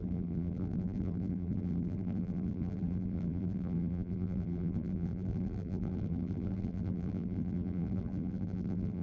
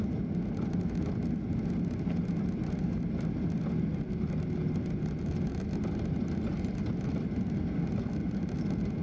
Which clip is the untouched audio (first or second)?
second